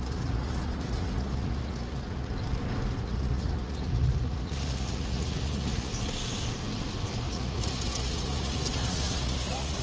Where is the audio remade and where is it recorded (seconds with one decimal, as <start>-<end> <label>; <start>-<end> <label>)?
0.0-2.3 remade; 2.3-3.0 recorded; 3.0-5.9 remade; 5.9-7.3 recorded; 7.3-9.8 remade